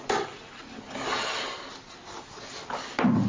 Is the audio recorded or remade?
recorded